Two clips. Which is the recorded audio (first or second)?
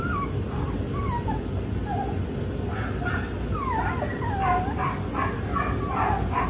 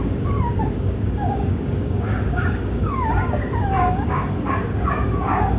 first